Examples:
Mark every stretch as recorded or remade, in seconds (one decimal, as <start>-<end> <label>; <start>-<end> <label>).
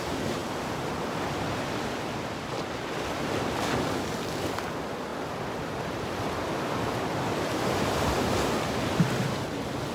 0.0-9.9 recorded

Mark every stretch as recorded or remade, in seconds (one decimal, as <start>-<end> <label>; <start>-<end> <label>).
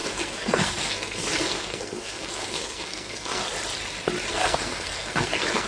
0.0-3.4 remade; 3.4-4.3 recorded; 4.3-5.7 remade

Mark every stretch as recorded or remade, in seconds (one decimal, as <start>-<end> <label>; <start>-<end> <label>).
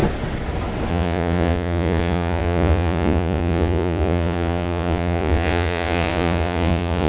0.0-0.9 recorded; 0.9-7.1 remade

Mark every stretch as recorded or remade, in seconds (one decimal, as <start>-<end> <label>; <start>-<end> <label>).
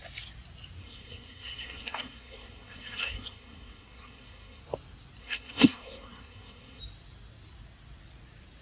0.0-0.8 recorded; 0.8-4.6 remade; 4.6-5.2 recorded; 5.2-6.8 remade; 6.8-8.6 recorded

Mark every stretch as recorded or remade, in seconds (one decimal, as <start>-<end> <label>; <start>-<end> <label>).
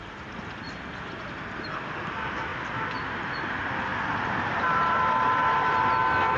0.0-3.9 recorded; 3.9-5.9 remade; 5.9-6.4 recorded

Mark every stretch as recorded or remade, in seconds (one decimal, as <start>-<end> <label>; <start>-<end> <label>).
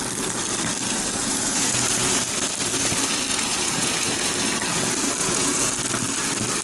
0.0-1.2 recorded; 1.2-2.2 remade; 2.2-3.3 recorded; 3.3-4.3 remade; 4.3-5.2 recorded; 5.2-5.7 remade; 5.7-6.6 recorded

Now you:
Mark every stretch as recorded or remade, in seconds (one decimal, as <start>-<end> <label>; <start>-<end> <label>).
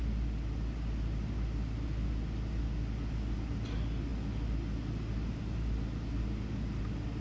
0.0-7.2 recorded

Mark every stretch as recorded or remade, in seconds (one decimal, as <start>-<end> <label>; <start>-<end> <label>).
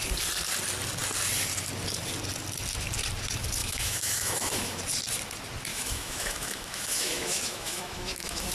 0.0-3.6 recorded; 3.6-4.8 remade; 4.8-5.7 recorded; 5.7-8.5 remade